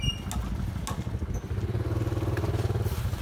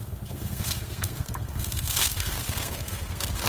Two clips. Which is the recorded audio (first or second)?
first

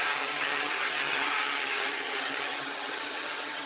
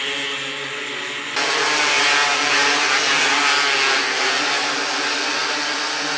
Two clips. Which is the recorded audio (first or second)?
second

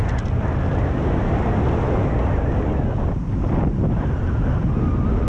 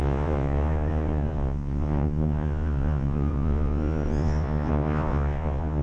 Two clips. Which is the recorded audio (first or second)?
first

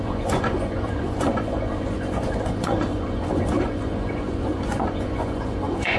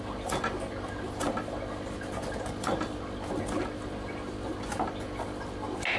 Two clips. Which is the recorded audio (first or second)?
second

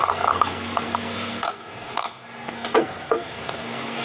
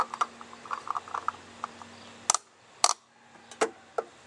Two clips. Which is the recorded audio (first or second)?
second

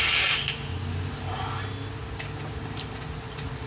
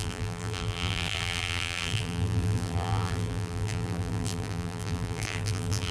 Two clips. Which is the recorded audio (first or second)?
first